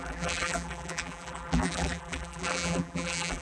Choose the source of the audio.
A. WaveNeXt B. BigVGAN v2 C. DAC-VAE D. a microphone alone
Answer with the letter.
B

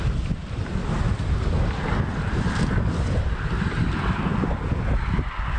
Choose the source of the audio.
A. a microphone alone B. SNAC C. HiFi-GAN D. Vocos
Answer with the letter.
A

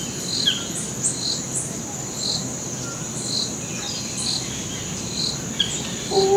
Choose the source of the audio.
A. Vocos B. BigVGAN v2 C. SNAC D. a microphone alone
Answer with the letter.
D